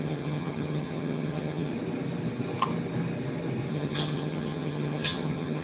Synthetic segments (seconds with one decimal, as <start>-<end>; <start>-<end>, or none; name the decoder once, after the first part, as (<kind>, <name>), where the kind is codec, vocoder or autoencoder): 0.0-1.7 (vocoder, HiFi-GAN); 3.7-5.6